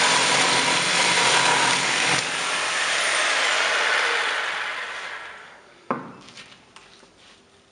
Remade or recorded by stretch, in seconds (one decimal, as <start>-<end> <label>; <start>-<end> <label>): 0.0-1.5 recorded; 1.5-2.2 remade; 2.2-5.4 recorded; 5.4-6.0 remade; 6.0-7.7 recorded